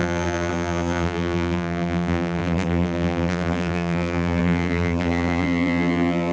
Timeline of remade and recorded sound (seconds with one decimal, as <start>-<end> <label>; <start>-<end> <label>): 0.0-6.3 remade